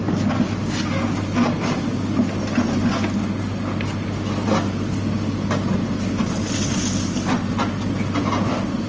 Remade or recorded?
recorded